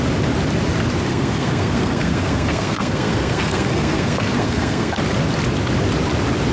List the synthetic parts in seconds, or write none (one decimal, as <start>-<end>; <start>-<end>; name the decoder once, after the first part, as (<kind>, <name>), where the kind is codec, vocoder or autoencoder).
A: 1.1-5.0 (codec, SNAC)